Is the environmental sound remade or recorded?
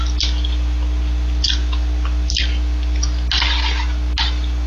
recorded